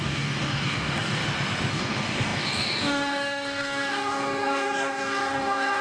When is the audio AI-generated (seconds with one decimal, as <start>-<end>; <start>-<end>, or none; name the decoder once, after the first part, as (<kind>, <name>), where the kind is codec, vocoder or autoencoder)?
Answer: 0.0-1.2 (codec, DAC); 1.7-5.8